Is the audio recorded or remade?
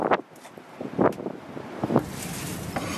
recorded